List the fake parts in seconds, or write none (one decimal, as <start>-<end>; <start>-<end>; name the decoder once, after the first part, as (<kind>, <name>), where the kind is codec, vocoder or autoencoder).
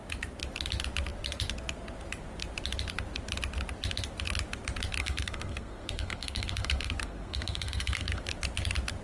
5.0-8.2 (codec, SNAC)